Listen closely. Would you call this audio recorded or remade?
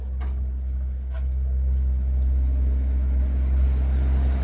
recorded